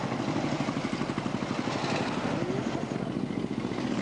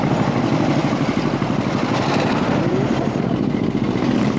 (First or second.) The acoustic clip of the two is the first